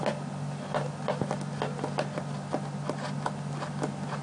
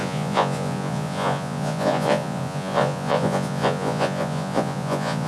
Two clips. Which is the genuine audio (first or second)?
first